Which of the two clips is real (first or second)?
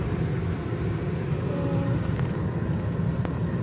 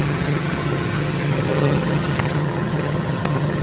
first